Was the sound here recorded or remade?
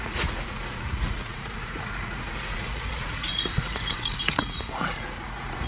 remade